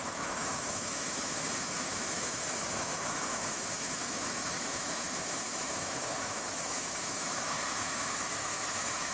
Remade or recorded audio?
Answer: remade